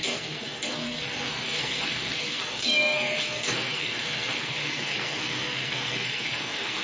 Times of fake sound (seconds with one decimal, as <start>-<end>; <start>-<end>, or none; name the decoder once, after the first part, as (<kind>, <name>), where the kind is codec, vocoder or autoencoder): 0.0-6.8 (codec, SNAC)